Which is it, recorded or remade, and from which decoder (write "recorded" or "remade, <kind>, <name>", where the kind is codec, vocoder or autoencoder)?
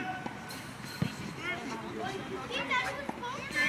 recorded